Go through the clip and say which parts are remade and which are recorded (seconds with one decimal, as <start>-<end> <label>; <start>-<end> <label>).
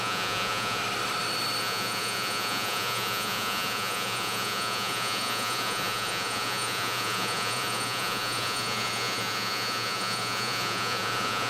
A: 0.0-0.8 remade; 0.8-1.6 recorded; 1.6-11.5 remade